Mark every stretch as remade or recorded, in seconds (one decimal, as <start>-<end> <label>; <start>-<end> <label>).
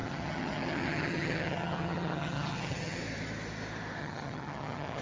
0.0-3.0 remade; 3.0-4.0 recorded; 4.0-5.0 remade